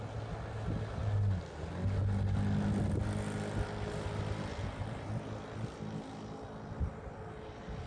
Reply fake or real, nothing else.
real